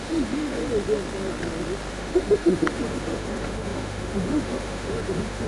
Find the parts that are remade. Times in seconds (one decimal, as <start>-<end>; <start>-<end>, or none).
0.0-0.6; 1.9-5.5